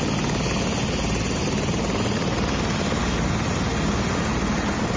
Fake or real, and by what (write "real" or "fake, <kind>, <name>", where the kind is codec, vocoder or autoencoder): real